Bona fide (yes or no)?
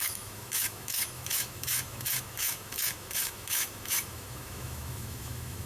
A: no